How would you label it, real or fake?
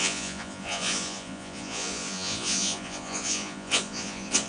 fake